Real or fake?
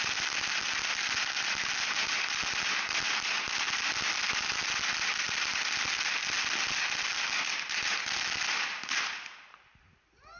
real